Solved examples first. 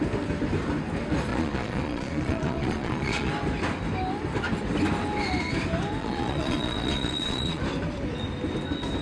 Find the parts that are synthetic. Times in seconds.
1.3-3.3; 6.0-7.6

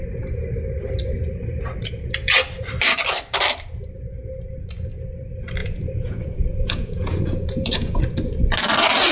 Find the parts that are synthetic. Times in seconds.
5.6-8.0

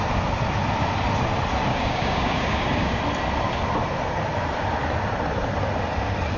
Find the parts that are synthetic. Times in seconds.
1.7-3.0

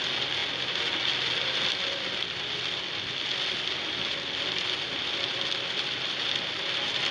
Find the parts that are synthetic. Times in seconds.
none